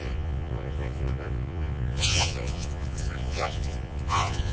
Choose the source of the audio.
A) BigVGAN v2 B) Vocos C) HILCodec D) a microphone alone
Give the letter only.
B